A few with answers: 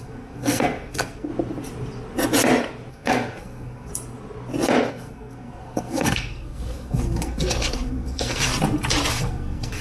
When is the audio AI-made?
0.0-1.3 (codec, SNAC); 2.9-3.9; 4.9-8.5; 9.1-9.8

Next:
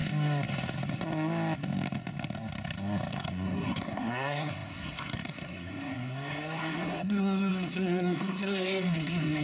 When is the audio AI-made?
3.1-9.4 (codec, SNAC)